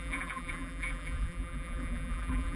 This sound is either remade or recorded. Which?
remade